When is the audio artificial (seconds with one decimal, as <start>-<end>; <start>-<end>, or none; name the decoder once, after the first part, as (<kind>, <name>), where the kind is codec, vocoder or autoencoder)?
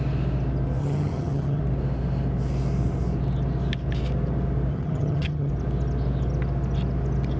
0.8-1.6 (vocoder, HiFi-GAN); 4.7-5.5